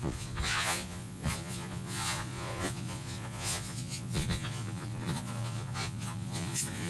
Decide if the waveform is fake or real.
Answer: fake